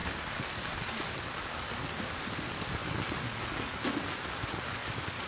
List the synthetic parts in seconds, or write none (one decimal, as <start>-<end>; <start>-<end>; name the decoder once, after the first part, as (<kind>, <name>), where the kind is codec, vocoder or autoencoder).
0.0-1.4 (vocoder, BigVGAN v2); 4.8-5.3